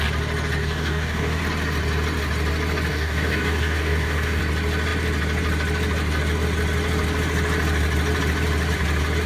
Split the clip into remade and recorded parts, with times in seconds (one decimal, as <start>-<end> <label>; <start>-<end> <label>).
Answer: 0.0-0.6 recorded; 0.6-1.4 remade; 1.4-2.9 recorded; 2.9-4.4 remade; 4.4-9.3 recorded